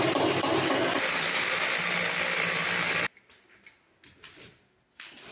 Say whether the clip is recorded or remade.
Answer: recorded